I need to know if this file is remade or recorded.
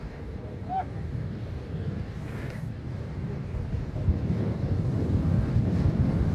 remade